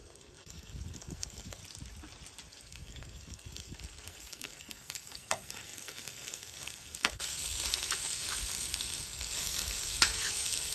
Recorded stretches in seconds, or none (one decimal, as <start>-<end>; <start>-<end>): 1.6-2.5